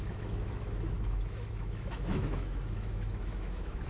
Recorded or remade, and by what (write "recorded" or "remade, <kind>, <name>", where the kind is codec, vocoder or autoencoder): remade, autoencoder, DAC-VAE